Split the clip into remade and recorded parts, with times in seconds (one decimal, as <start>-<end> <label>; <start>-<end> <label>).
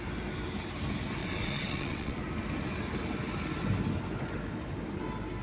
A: 0.0-1.2 recorded; 1.2-2.2 remade; 2.2-5.4 recorded